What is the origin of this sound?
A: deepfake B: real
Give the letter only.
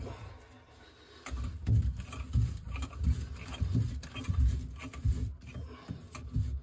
B